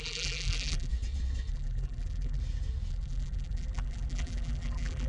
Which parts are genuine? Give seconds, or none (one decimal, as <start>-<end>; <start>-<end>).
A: 0.9-1.5; 2.4-2.9